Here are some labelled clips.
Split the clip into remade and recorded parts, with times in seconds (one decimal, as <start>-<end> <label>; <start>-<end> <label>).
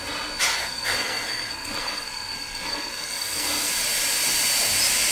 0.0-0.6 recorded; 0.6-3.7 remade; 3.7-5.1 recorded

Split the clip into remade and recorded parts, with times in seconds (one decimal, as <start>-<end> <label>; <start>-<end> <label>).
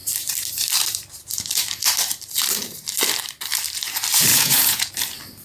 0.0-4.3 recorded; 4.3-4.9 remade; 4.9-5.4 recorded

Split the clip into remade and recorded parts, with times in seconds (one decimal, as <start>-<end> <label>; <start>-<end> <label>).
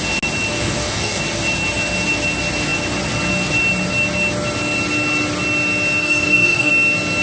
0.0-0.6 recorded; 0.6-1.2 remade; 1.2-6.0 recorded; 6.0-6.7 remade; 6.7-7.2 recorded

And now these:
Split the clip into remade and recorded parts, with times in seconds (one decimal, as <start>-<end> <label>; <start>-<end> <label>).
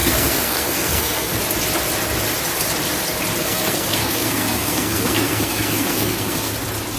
0.0-1.4 remade; 1.4-3.4 recorded; 3.4-6.5 remade; 6.5-7.0 recorded